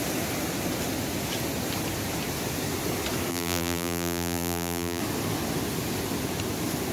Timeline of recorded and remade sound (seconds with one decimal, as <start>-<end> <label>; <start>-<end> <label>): 0.0-3.3 recorded; 3.3-5.0 remade; 5.0-6.9 recorded